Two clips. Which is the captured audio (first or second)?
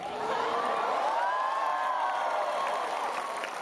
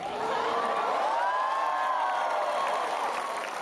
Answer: second